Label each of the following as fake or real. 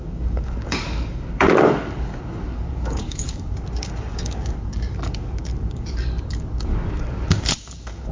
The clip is fake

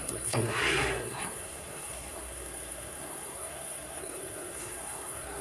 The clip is fake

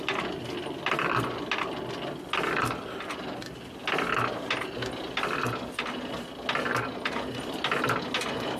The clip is real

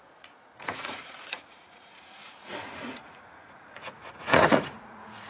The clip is fake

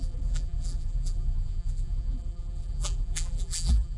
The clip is fake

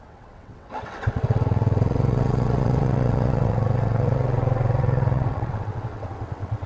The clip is fake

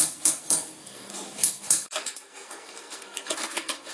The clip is fake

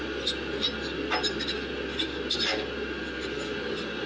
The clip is real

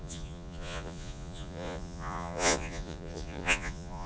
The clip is fake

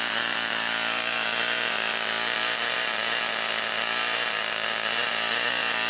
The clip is fake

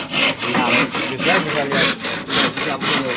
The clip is real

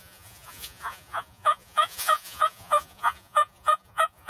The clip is fake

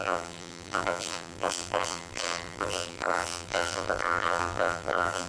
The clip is fake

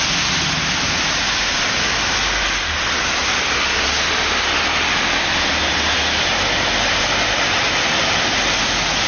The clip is real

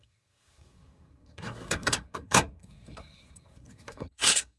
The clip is fake